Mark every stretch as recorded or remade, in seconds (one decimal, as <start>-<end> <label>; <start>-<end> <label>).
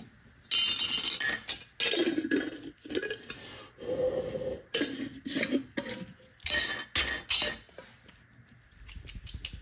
0.0-9.6 recorded